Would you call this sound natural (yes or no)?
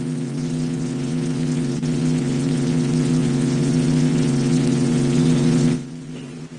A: no